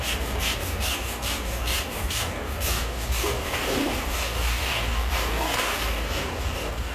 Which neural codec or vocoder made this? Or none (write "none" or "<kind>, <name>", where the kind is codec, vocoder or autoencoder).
codec, DAC